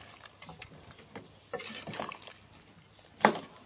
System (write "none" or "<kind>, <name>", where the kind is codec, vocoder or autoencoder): vocoder, BigVGAN v2